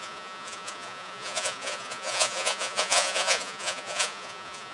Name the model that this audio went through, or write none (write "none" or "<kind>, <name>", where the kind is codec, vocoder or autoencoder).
vocoder, Vocos